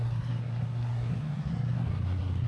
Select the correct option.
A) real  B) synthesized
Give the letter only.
B